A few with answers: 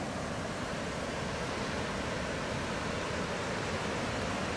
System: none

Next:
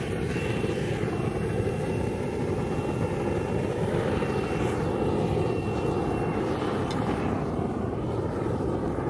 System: none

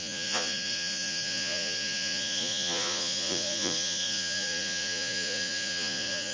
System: vocoder, Vocos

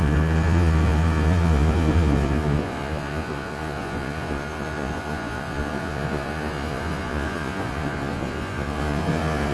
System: vocoder, Vocos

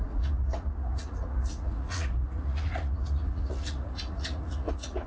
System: vocoder, Vocos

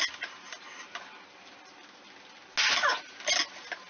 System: none